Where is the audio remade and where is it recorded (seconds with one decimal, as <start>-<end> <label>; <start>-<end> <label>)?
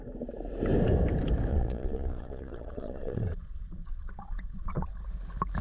0.0-1.5 recorded; 1.5-4.9 remade; 4.9-5.6 recorded